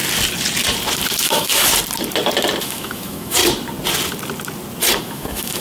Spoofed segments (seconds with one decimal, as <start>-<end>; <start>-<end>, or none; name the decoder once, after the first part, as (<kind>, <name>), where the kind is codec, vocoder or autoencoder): 1.1-1.7 (autoencoder, DAC-VAE); 2.6-3.4; 5.0-5.6